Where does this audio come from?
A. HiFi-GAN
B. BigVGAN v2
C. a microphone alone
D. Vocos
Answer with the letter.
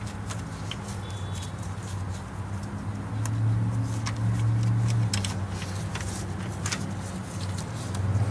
C